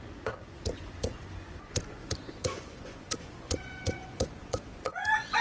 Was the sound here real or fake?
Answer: fake